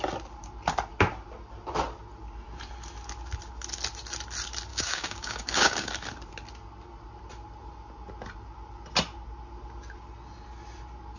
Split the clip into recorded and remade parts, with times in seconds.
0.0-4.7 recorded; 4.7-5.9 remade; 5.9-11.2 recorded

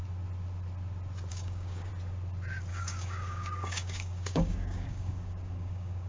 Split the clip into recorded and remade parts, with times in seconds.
0.0-1.3 recorded; 1.3-1.9 remade; 1.9-2.7 recorded; 2.7-6.1 remade

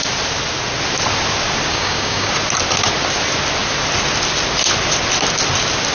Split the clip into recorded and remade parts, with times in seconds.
0.0-1.7 recorded; 1.7-2.3 remade; 2.3-5.9 recorded